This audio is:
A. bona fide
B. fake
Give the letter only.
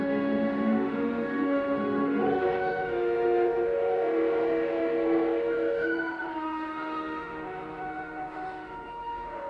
B